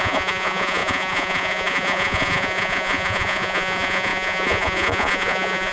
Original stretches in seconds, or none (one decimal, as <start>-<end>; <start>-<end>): none